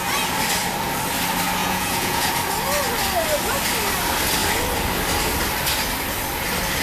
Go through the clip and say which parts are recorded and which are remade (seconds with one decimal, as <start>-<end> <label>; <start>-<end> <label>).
0.0-1.6 recorded; 1.6-2.3 remade; 2.3-6.8 recorded